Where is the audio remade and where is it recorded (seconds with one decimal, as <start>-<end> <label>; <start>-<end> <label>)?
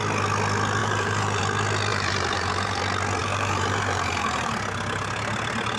0.0-0.8 recorded; 0.8-1.4 remade; 1.4-1.9 recorded; 1.9-2.8 remade; 2.8-3.2 recorded; 3.2-4.5 remade; 4.5-5.8 recorded